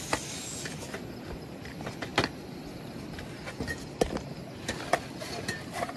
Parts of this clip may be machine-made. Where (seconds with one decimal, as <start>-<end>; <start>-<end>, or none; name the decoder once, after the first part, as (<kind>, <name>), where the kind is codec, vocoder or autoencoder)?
none